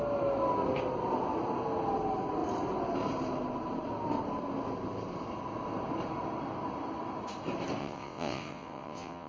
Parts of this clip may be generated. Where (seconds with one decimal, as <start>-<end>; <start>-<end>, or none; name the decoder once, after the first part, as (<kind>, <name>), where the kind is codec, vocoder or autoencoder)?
7.8-9.3 (vocoder, WaveNeXt)